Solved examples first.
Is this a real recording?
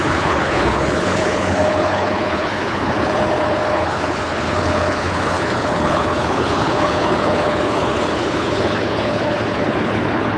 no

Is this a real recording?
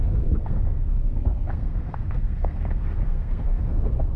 no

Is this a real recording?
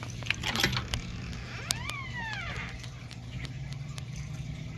yes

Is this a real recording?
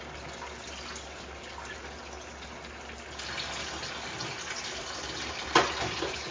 yes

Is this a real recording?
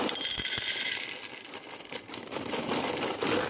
yes